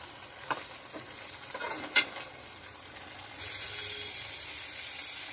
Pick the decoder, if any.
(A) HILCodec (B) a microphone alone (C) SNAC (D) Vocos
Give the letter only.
B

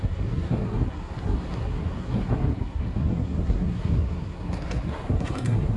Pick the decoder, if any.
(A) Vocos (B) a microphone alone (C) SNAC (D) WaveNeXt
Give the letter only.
C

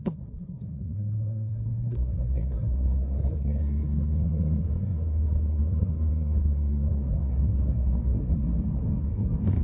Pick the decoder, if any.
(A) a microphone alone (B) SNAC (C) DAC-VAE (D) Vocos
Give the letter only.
B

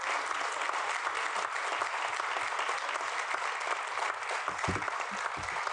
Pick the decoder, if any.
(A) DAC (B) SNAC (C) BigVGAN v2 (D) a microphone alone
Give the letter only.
D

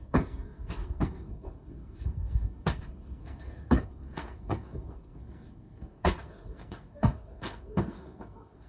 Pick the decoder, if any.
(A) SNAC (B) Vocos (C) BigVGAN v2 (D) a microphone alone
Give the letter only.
A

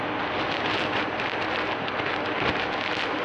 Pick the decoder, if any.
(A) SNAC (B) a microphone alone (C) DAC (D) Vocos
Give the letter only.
B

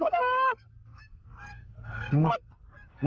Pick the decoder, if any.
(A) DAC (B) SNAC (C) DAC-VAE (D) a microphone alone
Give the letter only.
B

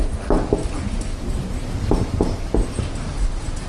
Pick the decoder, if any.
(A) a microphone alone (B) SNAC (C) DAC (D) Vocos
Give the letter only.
A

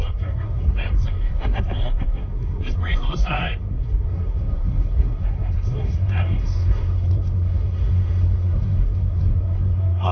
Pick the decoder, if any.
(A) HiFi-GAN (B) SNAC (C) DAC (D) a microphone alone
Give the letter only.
B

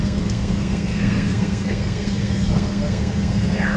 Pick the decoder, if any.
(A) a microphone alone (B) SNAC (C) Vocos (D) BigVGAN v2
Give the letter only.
B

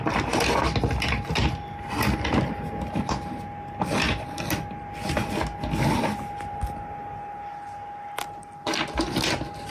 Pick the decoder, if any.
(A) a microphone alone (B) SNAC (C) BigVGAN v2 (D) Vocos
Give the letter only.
A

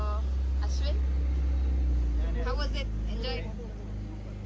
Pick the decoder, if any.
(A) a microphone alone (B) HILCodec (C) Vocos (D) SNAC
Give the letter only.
A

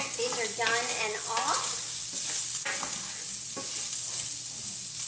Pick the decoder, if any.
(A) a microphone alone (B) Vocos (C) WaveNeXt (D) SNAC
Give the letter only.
A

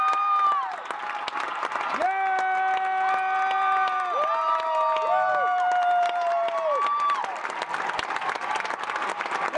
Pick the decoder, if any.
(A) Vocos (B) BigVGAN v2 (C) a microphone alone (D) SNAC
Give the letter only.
C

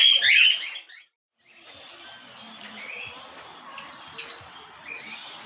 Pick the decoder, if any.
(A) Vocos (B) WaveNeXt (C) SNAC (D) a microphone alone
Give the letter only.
D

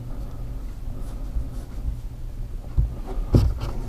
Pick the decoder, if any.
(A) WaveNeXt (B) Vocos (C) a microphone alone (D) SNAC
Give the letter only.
C